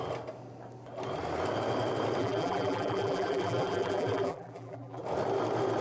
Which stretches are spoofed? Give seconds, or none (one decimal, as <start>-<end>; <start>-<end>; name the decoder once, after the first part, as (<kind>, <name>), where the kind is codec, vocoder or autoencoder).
2.2-5.0 (vocoder, BigVGAN v2)